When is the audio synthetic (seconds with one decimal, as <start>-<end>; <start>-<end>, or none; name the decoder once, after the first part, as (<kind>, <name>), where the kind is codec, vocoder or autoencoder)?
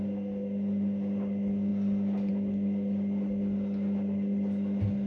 none